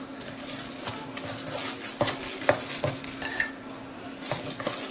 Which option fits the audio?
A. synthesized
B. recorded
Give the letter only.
B